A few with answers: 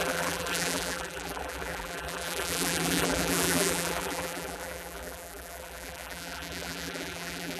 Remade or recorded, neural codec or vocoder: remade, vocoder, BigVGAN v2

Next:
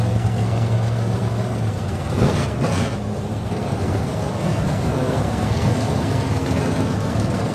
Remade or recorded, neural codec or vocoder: remade, codec, SNAC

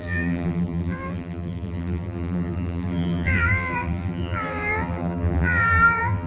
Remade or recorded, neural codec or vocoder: remade, vocoder, BigVGAN v2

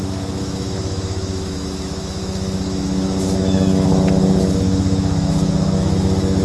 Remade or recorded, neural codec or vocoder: remade, autoencoder, DAC-VAE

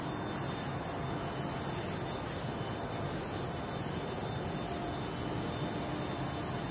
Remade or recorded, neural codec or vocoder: recorded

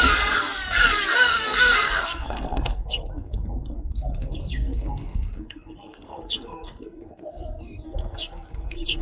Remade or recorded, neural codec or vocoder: remade, codec, SNAC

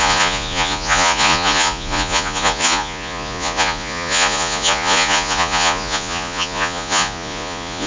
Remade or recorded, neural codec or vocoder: remade, vocoder, Vocos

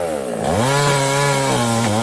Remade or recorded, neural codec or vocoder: recorded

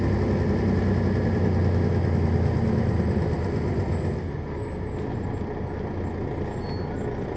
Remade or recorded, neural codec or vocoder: recorded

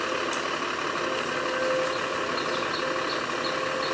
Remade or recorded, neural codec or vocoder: recorded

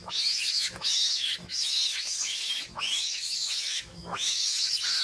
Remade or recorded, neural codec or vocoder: remade, autoencoder, DAC-VAE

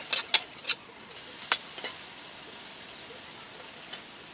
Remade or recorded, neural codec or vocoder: recorded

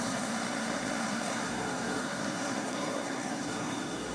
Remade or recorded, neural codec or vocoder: remade, codec, SNAC